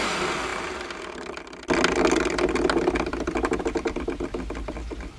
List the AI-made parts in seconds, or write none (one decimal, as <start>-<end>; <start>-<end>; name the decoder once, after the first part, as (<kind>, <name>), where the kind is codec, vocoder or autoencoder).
none

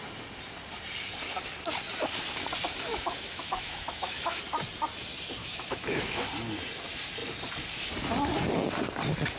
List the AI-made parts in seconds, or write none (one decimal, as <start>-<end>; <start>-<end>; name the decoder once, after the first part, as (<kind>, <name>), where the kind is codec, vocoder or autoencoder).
2.9-4.4 (autoencoder, DAC-VAE); 5.4-6.2